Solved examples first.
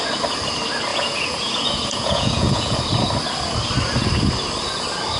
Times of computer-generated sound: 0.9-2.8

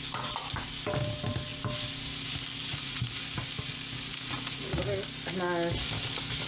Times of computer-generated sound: 2.7-3.2; 4.1-4.8

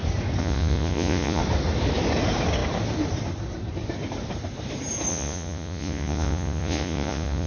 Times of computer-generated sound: 0.4-1.4; 5.1-7.5

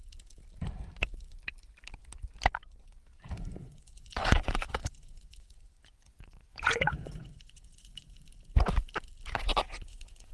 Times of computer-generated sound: 3.6-8.2; 9.5-10.3

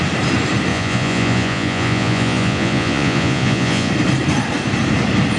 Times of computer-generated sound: 0.7-3.9

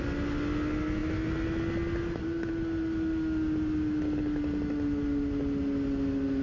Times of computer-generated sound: none